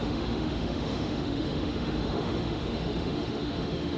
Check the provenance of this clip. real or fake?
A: fake